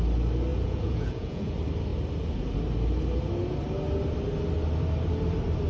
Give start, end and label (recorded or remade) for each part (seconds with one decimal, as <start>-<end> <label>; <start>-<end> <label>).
0.0-0.5 recorded; 0.5-1.5 remade; 1.5-5.7 recorded